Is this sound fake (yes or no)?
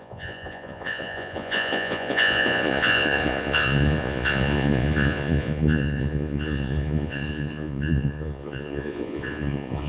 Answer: yes